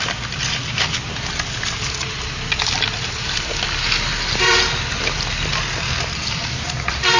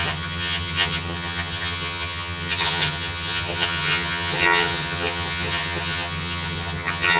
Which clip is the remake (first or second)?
second